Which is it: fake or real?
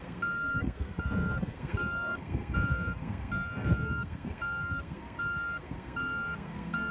fake